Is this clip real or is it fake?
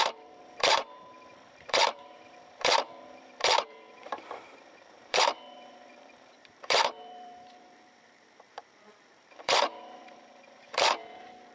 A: fake